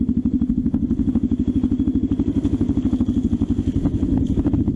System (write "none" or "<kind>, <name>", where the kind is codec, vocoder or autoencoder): none